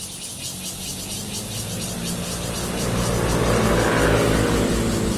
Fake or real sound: real